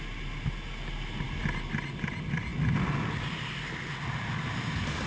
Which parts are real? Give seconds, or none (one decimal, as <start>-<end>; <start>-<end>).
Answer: 0.0-5.1